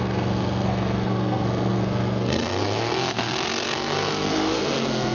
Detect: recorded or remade remade